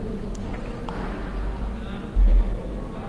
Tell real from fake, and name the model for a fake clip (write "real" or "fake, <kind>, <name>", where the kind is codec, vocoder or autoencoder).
real